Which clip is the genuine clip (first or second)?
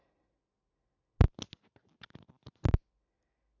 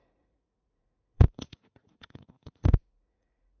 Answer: first